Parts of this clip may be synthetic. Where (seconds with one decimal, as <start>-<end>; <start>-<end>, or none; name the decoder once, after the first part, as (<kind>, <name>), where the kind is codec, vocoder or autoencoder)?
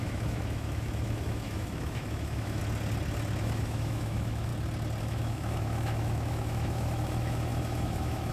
0.0-2.6 (autoencoder, DAC-VAE); 3.4-4.5; 5.0-8.3